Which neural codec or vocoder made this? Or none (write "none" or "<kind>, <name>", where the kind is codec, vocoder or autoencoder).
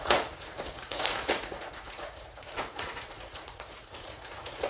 vocoder, Vocos